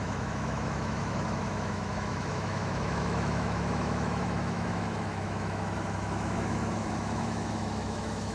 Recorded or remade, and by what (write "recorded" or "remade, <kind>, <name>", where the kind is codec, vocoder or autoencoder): remade, autoencoder, DAC-VAE